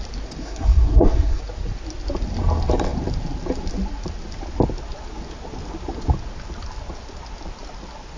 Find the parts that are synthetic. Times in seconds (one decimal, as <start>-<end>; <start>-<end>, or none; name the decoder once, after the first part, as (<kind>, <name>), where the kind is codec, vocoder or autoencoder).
0.4-1.4 (codec, SNAC)